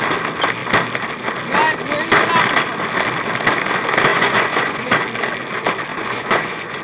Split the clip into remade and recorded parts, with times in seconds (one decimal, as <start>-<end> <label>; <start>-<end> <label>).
0.0-4.1 recorded; 4.1-4.9 remade; 4.9-5.9 recorded; 5.9-6.8 remade